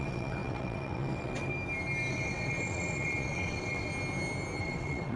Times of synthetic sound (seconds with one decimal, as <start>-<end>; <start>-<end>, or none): 0.0-1.5; 2.1-3.9; 4.6-5.2